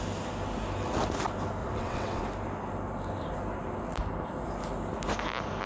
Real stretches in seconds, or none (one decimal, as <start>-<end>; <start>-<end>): 0.0-1.6; 2.2-5.7